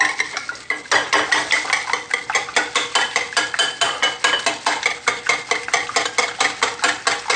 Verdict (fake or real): real